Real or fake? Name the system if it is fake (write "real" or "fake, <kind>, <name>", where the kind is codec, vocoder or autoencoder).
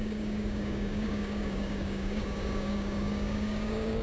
fake, codec, DAC